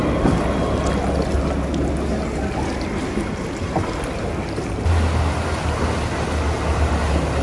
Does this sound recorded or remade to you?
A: recorded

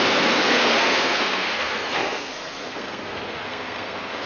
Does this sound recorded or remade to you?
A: remade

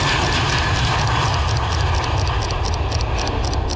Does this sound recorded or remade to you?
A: recorded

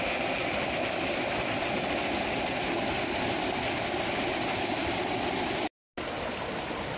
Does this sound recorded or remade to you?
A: recorded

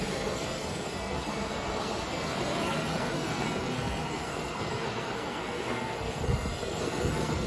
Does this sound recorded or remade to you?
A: remade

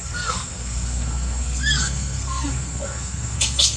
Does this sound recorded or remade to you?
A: remade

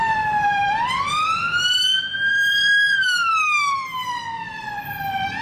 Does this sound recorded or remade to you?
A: remade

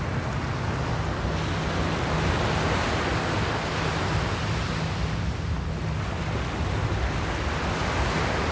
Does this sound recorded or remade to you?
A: recorded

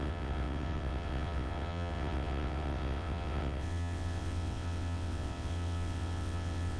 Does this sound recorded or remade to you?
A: remade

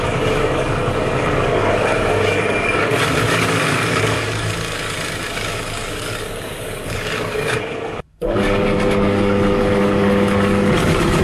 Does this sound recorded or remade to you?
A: remade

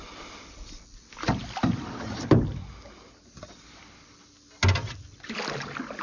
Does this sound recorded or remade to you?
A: recorded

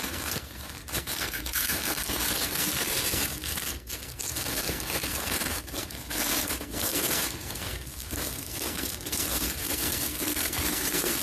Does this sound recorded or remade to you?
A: remade